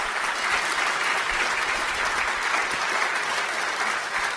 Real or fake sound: real